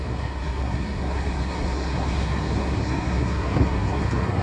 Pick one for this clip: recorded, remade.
remade